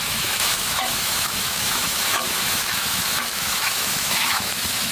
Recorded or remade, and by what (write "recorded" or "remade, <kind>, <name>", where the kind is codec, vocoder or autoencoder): remade, autoencoder, DAC-VAE